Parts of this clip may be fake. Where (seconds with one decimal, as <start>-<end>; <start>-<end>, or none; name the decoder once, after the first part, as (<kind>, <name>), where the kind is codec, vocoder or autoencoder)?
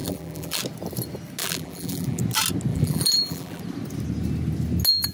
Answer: 0.0-0.6 (vocoder, BigVGAN v2); 1.4-2.2; 2.7-3.6